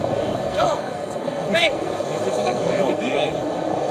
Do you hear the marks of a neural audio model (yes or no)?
yes